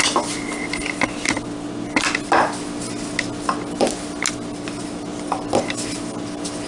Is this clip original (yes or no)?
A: yes